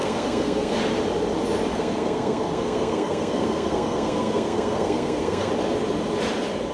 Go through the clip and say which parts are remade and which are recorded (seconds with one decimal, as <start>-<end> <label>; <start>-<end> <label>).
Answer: 0.0-0.8 remade; 0.8-1.7 recorded; 1.7-5.5 remade; 5.5-6.7 recorded

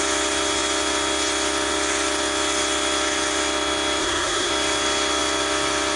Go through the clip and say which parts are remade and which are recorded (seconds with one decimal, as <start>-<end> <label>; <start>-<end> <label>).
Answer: 0.0-4.0 recorded; 4.0-4.5 remade; 4.5-6.0 recorded

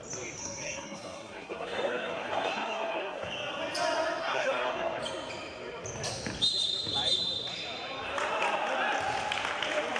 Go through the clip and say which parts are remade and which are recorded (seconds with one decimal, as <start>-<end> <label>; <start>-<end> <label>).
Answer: 0.0-0.4 recorded; 0.4-3.3 remade; 3.3-4.2 recorded; 4.2-5.0 remade; 5.0-10.0 recorded

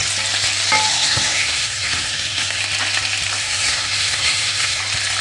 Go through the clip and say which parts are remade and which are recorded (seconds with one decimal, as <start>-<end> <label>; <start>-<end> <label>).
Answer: 0.0-0.9 recorded; 0.9-2.6 remade; 2.6-3.4 recorded; 3.4-4.8 remade; 4.8-5.2 recorded